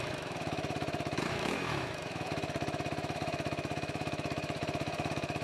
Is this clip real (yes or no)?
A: no